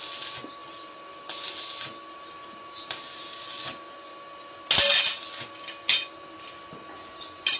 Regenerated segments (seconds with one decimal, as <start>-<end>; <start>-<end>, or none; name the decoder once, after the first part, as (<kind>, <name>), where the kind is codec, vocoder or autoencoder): none